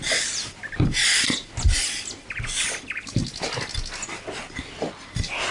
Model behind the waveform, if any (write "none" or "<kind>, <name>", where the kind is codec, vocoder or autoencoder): none